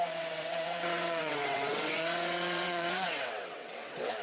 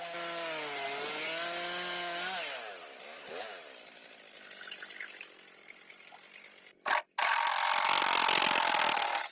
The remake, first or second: first